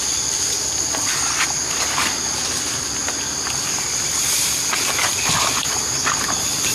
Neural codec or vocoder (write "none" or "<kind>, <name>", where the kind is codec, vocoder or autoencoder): none